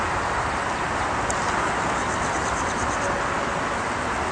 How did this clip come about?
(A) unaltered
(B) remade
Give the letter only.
A